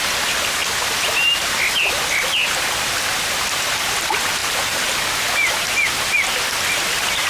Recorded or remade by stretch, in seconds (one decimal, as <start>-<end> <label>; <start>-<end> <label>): 0.0-7.3 recorded

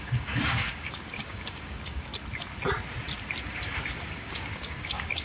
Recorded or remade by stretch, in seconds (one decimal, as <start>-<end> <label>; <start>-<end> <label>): 0.0-2.1 remade; 2.1-3.5 recorded; 3.5-5.2 remade

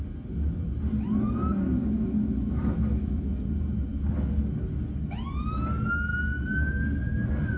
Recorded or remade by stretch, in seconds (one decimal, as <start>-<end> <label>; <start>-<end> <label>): 0.0-1.8 recorded; 1.8-3.3 remade; 3.3-7.6 recorded